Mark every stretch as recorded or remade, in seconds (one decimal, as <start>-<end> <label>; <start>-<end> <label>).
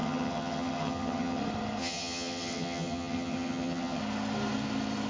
0.0-1.4 remade; 1.4-1.8 recorded; 1.8-4.0 remade; 4.0-5.1 recorded